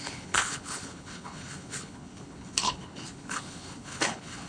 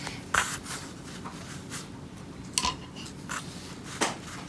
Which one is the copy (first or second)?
first